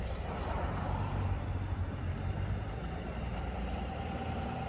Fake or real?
fake